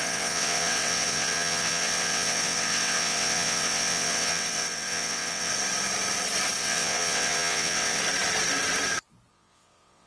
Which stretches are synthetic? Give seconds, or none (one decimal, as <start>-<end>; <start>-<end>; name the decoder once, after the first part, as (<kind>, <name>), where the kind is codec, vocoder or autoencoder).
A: 0.0-5.5 (vocoder, WaveNeXt); 6.6-8.0; 9.3-10.1